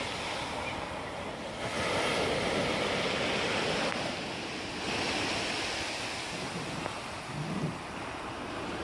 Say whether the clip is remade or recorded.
recorded